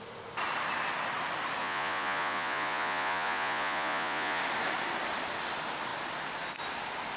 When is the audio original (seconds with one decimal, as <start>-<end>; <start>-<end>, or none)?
0.0-1.6; 4.4-7.2